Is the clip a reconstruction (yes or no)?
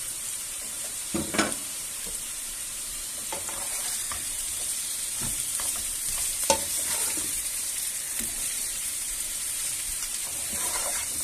yes